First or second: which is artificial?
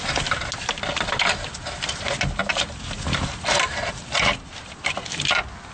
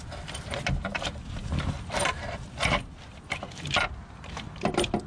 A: second